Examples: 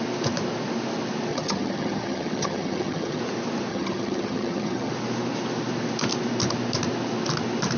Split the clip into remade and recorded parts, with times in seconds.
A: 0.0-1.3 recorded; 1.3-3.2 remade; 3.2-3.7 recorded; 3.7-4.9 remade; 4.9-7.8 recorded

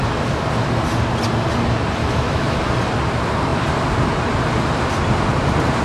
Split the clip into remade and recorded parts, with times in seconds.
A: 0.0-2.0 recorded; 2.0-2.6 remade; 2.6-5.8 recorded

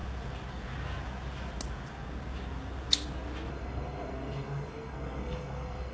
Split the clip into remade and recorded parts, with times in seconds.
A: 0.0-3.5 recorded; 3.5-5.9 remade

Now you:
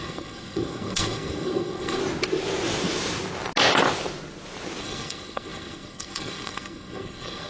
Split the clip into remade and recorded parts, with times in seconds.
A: 0.0-2.0 remade; 2.0-4.8 recorded; 4.8-7.5 remade

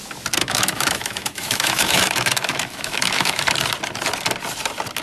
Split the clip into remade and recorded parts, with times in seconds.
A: 0.0-0.4 recorded; 0.4-3.4 remade; 3.4-5.0 recorded